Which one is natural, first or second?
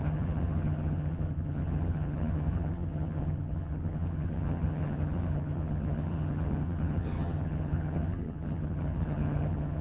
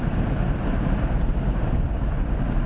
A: second